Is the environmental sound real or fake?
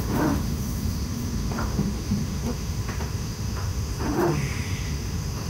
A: fake